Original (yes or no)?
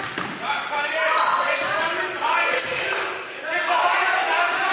yes